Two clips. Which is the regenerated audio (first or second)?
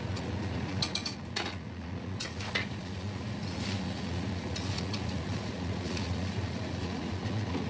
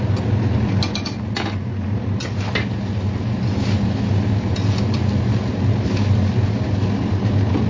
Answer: first